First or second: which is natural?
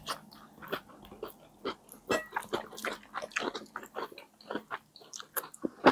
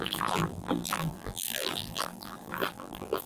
first